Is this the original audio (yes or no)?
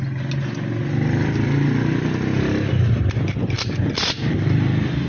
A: yes